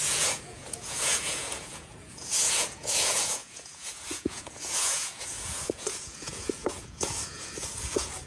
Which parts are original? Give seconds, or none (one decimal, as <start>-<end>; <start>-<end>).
none